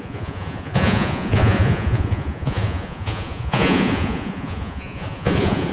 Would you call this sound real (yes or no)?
no